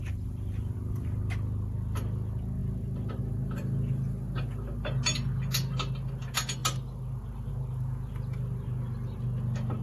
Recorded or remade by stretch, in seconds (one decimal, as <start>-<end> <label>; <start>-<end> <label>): 0.0-9.8 recorded